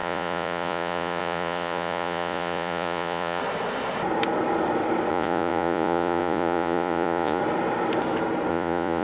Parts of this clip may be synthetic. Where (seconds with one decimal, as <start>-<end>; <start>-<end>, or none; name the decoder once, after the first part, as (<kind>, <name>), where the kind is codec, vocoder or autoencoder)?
0.0-3.4 (vocoder, Vocos); 5.1-7.4; 8.5-9.0